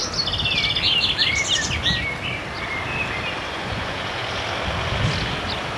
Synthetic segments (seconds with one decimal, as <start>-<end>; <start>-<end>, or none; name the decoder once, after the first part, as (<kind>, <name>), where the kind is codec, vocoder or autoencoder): 3.5-4.2 (vocoder, Vocos)